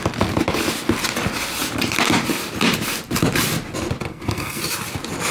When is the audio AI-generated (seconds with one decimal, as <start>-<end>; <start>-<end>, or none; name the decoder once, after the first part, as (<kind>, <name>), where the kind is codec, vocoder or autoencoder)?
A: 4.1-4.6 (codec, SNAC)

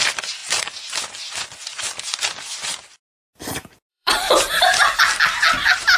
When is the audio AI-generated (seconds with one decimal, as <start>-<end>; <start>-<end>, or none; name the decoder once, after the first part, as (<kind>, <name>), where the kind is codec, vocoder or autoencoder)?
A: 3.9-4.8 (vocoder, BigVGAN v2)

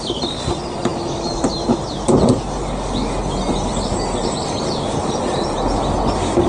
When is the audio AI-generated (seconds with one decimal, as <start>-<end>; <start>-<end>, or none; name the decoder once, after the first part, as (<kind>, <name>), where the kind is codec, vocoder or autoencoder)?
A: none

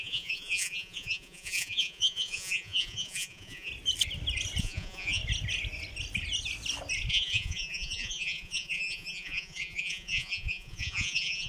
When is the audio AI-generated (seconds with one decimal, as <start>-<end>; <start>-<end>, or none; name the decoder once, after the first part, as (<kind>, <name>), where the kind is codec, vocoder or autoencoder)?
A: 0.0-3.7 (vocoder, Vocos); 4.6-5.2; 7.1-11.5

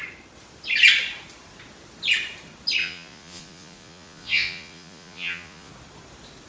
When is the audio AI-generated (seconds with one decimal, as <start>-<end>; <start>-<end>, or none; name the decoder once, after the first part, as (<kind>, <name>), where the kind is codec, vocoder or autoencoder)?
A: 2.8-5.7 (vocoder, Vocos)

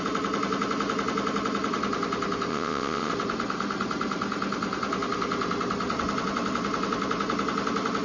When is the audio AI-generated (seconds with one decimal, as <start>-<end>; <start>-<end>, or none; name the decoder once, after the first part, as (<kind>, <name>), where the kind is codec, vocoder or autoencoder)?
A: 2.5-3.1 (vocoder, WaveNeXt)